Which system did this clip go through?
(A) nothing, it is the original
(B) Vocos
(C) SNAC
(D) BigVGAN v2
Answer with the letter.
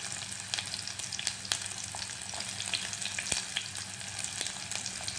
A